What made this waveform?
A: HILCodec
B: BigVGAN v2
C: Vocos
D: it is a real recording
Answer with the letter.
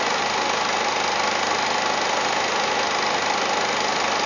D